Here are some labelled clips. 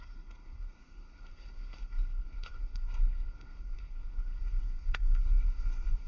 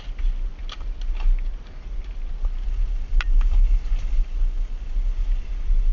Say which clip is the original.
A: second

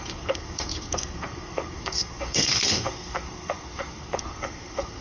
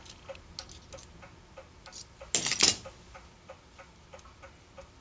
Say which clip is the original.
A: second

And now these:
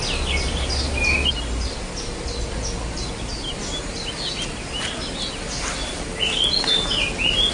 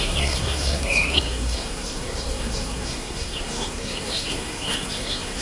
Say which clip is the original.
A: first